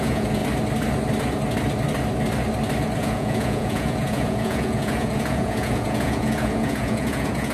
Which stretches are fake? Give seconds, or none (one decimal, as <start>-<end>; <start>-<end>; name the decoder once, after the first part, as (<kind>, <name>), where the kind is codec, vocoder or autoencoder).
0.0-0.4 (vocoder, Vocos); 3.0-7.5